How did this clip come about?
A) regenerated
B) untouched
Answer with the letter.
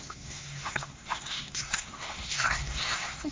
A